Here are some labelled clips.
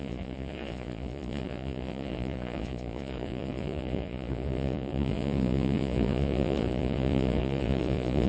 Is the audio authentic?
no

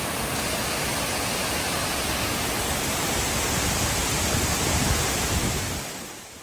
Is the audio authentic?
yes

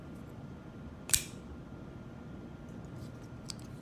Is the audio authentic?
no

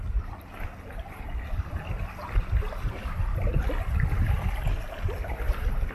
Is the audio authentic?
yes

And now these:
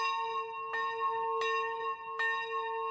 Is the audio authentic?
yes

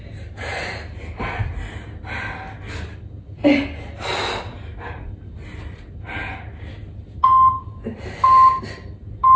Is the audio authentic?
yes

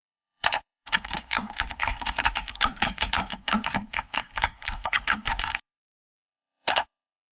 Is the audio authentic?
no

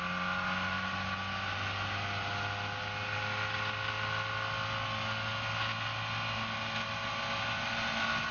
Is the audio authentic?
yes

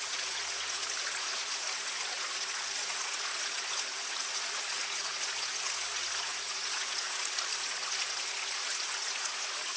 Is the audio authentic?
no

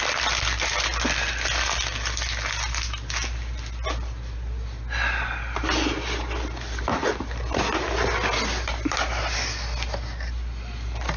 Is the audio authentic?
yes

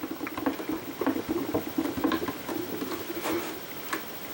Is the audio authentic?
yes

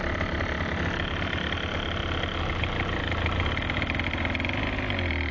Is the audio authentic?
yes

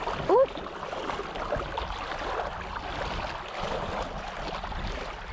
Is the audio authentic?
yes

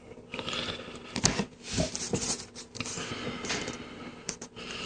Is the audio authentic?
yes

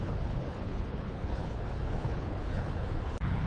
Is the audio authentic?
no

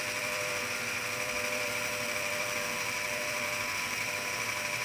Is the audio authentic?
no